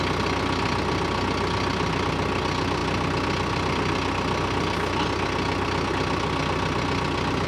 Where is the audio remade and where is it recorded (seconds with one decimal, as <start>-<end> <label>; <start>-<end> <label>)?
0.0-7.5 recorded